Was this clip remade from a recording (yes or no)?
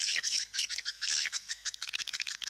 yes